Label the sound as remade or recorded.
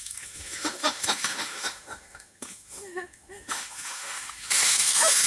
remade